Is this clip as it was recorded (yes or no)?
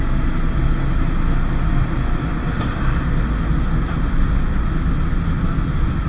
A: yes